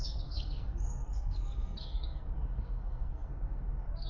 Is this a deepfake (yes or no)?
yes